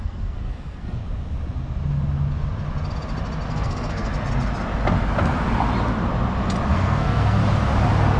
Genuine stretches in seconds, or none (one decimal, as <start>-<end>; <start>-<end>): 1.0-3.5; 4.1-6.7; 7.4-8.2